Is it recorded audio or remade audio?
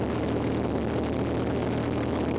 recorded